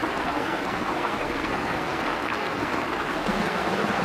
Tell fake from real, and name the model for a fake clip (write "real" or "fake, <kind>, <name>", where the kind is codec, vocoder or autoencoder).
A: fake, codec, SNAC